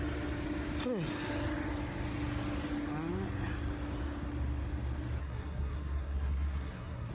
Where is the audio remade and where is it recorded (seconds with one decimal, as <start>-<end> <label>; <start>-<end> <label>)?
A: 0.0-5.2 recorded; 5.2-7.1 remade